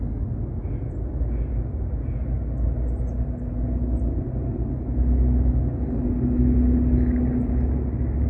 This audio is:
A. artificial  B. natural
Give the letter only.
B